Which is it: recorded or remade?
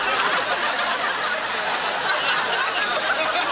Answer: recorded